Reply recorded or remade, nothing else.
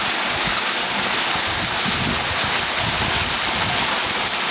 recorded